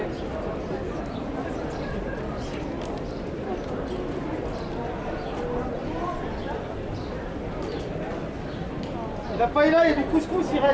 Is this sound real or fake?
real